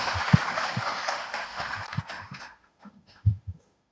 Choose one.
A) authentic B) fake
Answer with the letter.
B